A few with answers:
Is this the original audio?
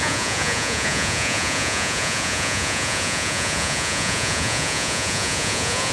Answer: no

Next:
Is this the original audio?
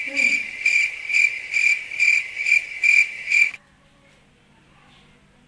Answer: yes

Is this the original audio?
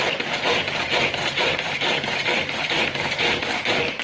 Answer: no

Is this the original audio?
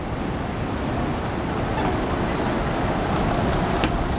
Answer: yes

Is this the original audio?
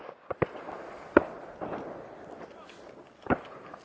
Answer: yes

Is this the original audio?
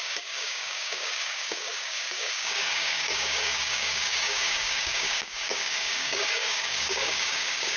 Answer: no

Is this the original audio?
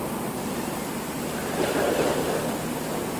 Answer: yes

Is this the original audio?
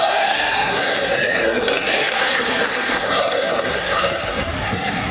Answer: no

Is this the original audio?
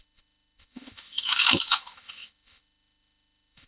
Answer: no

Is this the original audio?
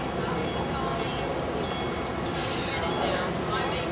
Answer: yes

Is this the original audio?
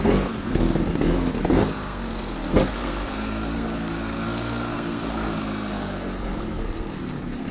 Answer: no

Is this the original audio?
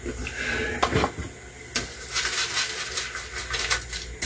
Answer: yes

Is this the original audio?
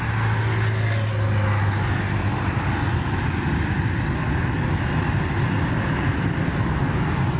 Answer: yes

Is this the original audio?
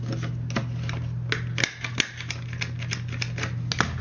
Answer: yes